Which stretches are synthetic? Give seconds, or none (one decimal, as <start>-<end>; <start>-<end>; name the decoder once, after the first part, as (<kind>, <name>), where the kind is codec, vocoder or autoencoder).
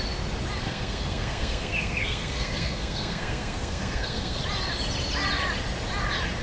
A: 0.6-4.4 (codec, SNAC)